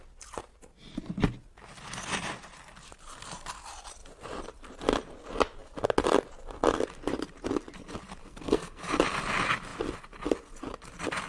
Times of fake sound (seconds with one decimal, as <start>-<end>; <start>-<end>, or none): 8.2-8.8